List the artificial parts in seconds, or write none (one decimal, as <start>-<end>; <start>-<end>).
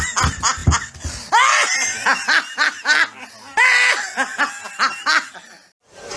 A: none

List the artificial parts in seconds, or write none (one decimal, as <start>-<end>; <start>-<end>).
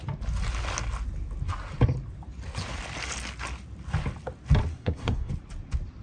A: 4.7-5.3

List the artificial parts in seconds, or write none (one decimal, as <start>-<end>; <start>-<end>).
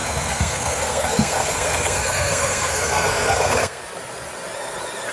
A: 0.0-3.8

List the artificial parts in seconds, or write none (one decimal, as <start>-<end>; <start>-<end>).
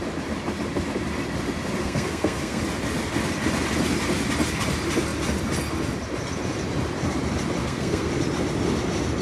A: 1.8-2.6; 7.6-8.1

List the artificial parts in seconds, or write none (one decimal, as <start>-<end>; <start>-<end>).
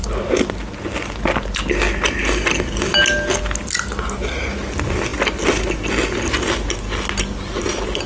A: none